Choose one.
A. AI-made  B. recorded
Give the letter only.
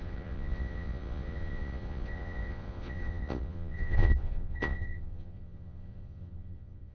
A